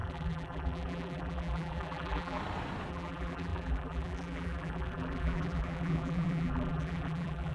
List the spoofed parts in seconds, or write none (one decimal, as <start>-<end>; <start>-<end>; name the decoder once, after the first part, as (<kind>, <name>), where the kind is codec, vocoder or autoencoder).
0.0-2.4 (vocoder, BigVGAN v2); 2.9-7.5